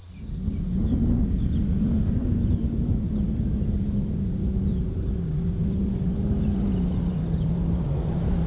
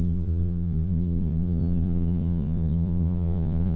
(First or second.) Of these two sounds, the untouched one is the first